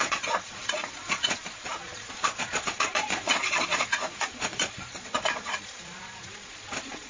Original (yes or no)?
no